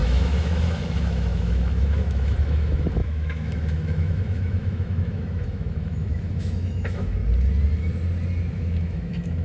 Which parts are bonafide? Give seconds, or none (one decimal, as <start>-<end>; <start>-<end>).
7.2-8.5